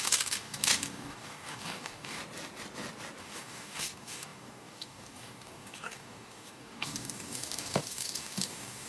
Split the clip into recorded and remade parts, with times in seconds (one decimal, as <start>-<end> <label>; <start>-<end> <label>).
0.0-2.2 remade; 2.2-3.2 recorded; 3.2-8.9 remade